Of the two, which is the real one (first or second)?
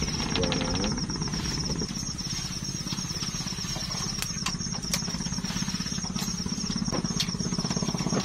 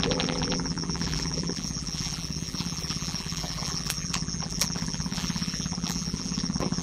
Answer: first